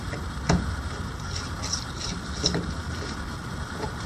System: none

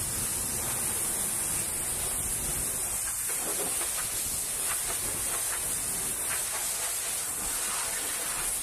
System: none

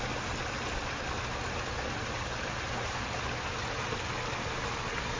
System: none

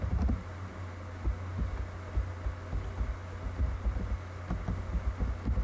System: none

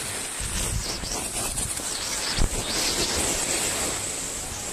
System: none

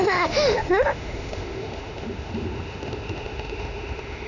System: autoencoder, DAC-VAE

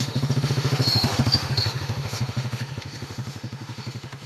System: autoencoder, DAC-VAE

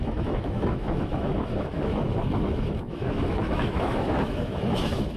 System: autoencoder, DAC-VAE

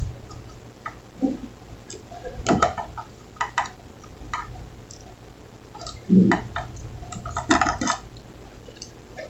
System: none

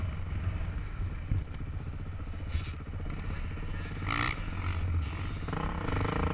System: none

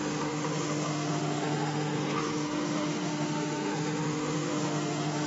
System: autoencoder, DAC-VAE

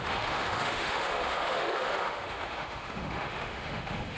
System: autoencoder, DAC-VAE